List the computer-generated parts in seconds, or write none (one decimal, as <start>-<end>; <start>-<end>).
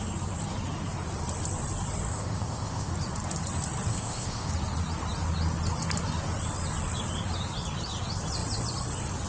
2.1-2.9; 3.9-4.5